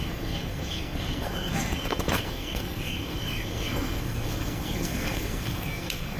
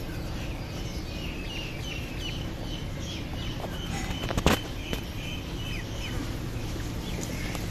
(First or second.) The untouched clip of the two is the second